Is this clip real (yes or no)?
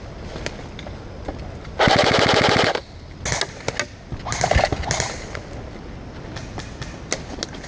yes